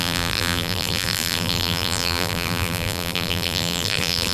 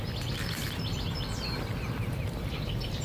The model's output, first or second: first